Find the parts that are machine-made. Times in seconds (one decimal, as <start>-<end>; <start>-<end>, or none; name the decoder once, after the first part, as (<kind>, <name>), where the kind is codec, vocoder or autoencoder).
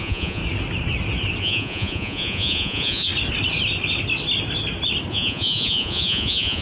0.0-0.4 (vocoder, Vocos); 1.4-3.1; 5.1-6.6